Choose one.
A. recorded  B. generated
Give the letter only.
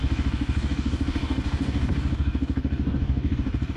B